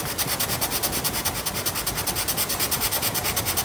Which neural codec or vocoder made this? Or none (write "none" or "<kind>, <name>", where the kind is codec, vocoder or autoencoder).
none